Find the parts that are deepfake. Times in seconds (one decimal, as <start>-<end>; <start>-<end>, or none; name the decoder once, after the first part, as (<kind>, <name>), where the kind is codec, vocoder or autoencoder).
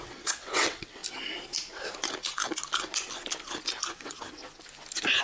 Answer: 0.0-1.0 (vocoder, WaveNeXt); 3.9-4.4